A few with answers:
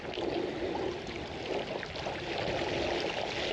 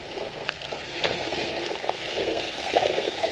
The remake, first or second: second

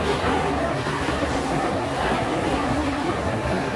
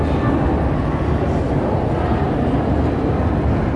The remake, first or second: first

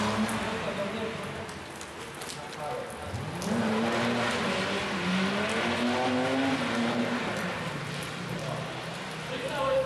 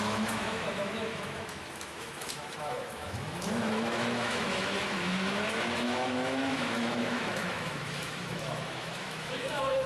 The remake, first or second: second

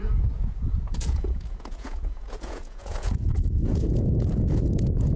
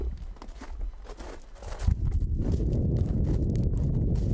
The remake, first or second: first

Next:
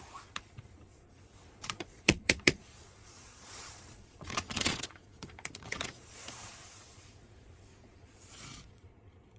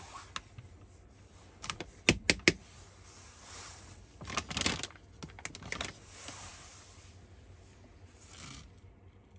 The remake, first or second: first